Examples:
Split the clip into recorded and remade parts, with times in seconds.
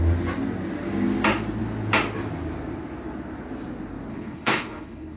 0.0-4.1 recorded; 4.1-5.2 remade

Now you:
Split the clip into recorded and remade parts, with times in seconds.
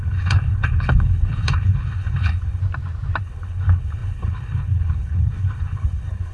0.0-2.6 remade; 2.6-3.2 recorded; 3.2-6.3 remade